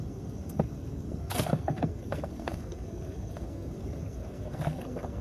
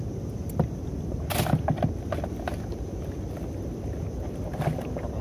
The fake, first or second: first